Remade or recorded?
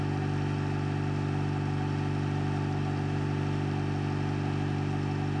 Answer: recorded